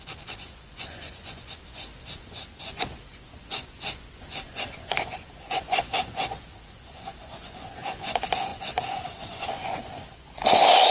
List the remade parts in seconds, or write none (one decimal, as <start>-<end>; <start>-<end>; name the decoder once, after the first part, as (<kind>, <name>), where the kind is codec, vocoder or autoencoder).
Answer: 0.0-10.9 (vocoder, Vocos)